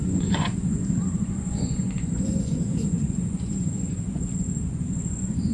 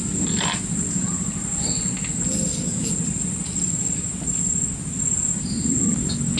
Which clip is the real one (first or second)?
second